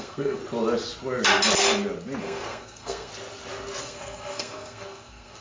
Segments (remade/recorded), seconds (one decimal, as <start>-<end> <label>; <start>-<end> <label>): 0.0-0.4 remade; 0.4-2.2 recorded; 2.2-3.1 remade; 3.1-3.8 recorded; 3.8-5.4 remade